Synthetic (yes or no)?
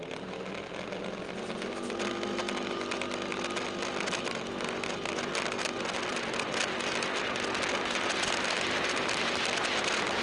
no